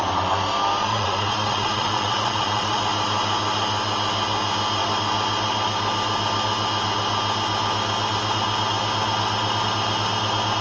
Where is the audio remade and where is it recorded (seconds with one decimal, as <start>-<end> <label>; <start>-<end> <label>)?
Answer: 0.0-0.8 recorded; 0.8-2.8 remade; 2.8-10.6 recorded